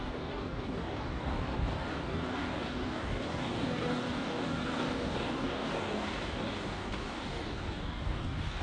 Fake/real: fake